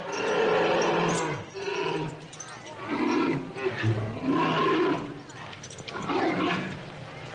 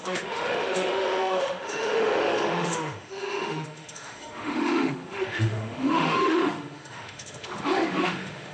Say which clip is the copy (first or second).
second